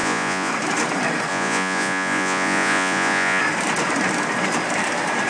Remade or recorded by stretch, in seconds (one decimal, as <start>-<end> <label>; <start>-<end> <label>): 0.0-0.5 remade; 0.5-1.3 recorded; 1.3-3.4 remade; 3.4-5.3 recorded